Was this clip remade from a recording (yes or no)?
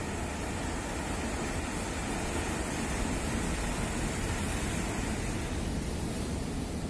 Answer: no